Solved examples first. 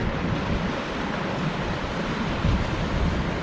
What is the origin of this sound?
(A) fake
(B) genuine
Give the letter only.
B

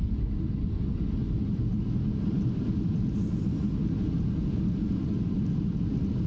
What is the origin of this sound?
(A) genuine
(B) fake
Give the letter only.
A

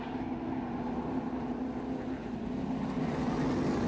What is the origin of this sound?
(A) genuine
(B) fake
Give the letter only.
A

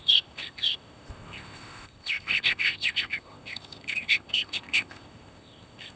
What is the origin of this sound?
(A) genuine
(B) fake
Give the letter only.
B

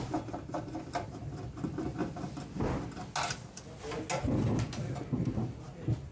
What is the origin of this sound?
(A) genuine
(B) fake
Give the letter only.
A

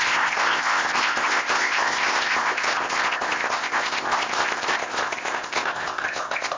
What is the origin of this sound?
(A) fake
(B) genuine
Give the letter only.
A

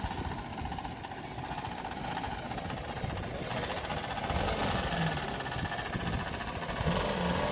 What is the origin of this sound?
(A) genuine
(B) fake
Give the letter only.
A